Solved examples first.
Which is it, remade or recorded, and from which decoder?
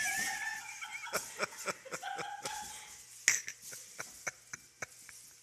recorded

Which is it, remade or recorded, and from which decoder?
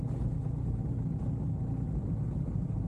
recorded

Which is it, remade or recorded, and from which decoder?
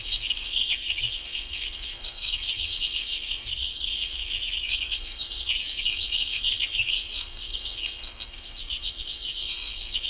remade, codec, SNAC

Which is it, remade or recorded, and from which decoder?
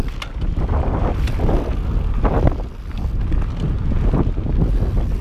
recorded